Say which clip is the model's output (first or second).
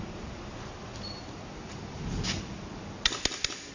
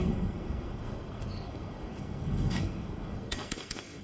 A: second